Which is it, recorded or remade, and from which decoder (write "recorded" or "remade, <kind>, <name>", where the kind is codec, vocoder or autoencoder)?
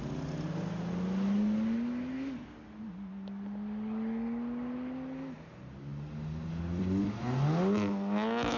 recorded